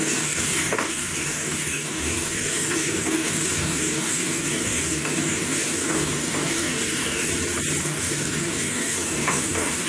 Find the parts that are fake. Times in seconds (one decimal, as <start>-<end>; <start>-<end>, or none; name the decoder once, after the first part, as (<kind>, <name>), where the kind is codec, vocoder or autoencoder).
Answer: 0.0-7.3 (codec, DAC); 7.8-9.9